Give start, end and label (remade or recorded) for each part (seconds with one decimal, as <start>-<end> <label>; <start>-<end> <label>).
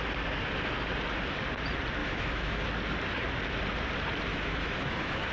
0.0-2.0 recorded; 2.0-2.6 remade; 2.6-4.3 recorded; 4.3-5.3 remade